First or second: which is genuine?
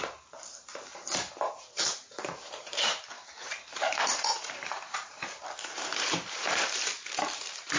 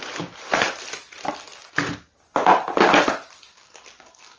second